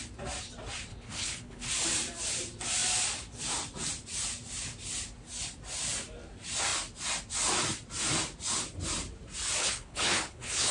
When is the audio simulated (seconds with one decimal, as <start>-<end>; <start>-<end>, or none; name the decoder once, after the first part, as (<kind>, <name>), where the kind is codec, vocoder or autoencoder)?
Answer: 0.9-1.7 (codec, HILCodec); 9.6-10.7